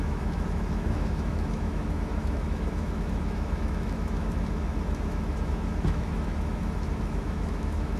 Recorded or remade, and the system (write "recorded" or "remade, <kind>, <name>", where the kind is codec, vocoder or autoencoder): remade, autoencoder, DAC-VAE